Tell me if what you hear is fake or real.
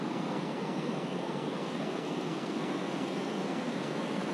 fake